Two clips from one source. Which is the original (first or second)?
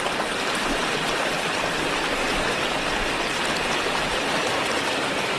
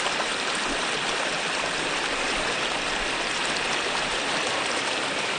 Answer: first